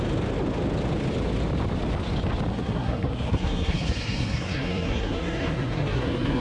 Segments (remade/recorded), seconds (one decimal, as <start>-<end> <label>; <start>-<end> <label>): 0.0-2.5 recorded; 2.5-6.4 remade